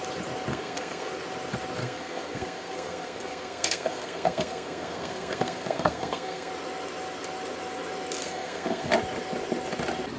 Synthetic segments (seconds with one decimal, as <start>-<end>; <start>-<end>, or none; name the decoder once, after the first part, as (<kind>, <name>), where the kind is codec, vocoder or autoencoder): 0.5-1.1 (codec, SNAC); 1.8-6.5; 8.2-8.9